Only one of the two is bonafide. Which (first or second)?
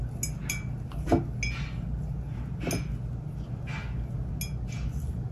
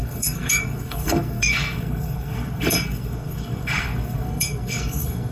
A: first